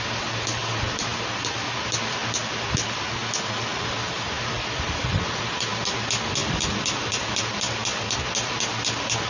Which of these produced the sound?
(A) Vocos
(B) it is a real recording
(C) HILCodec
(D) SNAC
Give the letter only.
B